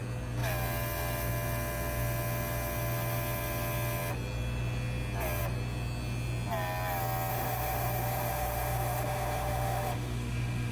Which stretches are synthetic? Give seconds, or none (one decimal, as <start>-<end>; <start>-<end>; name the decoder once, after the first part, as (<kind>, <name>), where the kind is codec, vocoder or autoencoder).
7.3-10.7 (autoencoder, DAC-VAE)